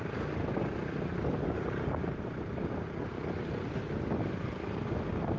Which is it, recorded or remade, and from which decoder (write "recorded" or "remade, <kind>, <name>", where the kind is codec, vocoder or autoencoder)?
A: recorded